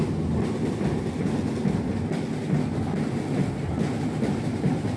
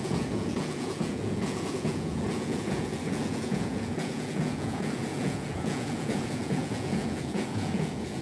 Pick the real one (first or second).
first